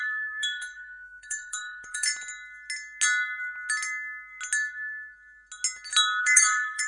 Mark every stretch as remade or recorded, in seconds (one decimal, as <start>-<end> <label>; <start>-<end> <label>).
0.0-2.1 remade; 2.1-6.2 recorded; 6.2-6.9 remade